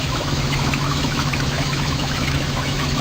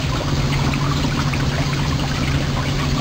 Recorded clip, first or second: second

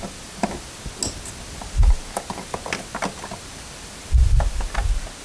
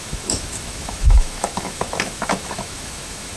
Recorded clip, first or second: first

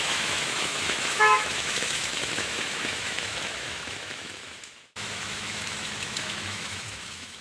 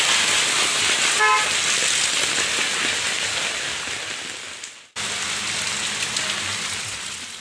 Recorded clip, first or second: second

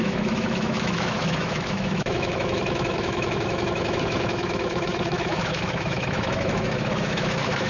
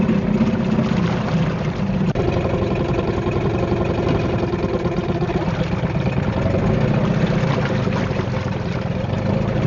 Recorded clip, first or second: second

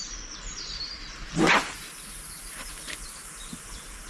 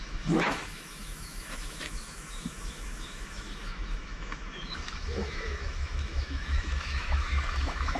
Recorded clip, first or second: first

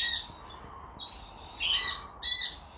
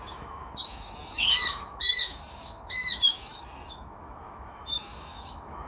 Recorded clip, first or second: first